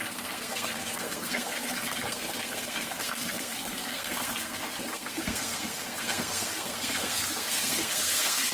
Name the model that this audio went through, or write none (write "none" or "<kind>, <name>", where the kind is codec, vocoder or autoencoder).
codec, SNAC